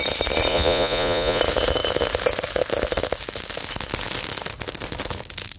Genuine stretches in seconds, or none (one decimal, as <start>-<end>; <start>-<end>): 0.0-0.5; 1.4-5.6